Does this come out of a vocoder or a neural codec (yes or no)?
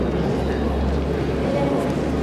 no